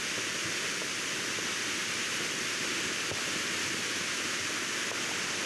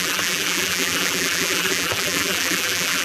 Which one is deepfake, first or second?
second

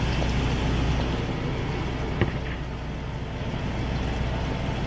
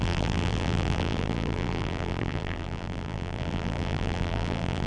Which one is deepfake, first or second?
second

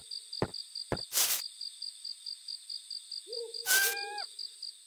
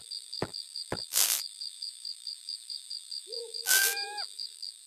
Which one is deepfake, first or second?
second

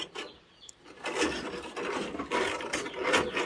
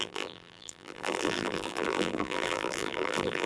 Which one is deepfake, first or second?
second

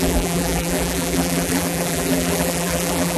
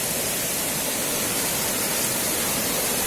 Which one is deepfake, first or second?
first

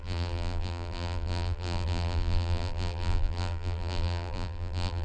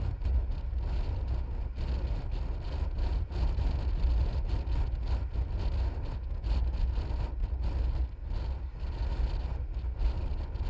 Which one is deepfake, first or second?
first